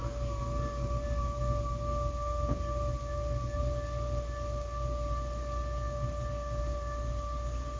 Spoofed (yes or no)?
no